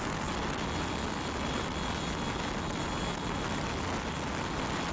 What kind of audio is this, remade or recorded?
recorded